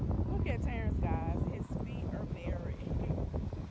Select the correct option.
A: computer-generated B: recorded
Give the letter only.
B